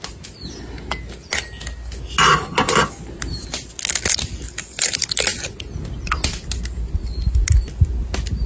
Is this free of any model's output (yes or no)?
yes